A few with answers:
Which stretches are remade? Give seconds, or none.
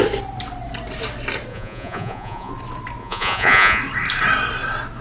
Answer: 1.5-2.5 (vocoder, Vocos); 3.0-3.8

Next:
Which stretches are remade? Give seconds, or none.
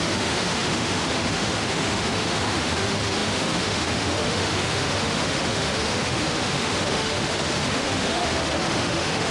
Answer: 0.0-9.3 (autoencoder, DAC-VAE)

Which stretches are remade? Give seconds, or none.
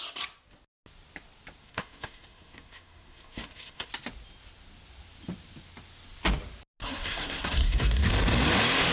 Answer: 1.6-3.9 (codec, SNAC); 6.8-8.1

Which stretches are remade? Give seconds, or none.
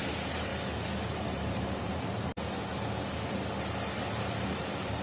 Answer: 0.0-0.5 (vocoder, BigVGAN v2); 1.2-2.3; 4.4-5.0